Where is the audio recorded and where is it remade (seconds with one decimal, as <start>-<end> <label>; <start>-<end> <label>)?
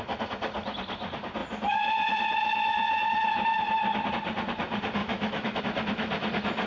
0.0-5.0 recorded; 5.0-5.6 remade; 5.6-6.7 recorded